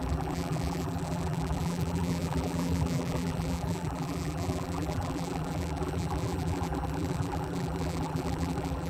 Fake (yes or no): yes